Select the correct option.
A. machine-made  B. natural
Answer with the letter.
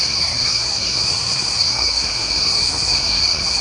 A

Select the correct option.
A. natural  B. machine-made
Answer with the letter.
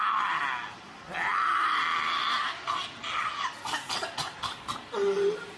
A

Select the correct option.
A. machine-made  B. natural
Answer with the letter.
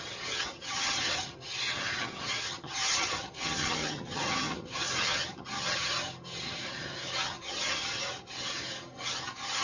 A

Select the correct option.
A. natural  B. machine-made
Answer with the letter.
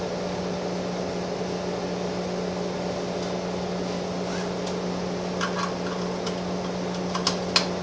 A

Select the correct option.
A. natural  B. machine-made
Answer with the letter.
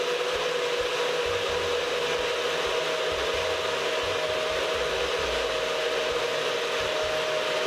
A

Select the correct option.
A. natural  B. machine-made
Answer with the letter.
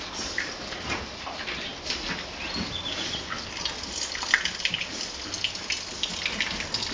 A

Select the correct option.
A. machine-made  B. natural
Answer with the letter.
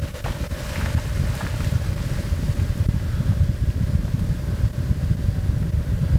B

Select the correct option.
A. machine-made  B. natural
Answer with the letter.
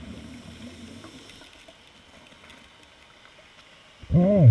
B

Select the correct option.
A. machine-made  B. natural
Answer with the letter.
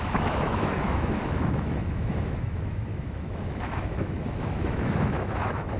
A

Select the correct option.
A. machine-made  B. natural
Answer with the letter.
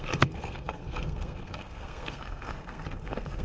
A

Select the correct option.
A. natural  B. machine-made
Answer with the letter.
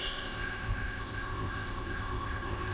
B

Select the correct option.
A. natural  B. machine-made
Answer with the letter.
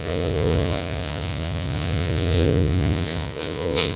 B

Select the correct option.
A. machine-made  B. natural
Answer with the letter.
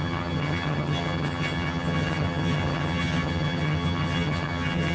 A